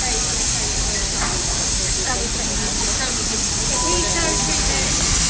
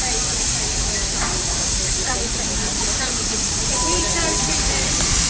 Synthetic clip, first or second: second